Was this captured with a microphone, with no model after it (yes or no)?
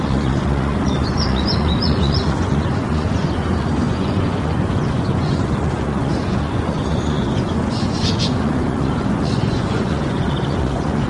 no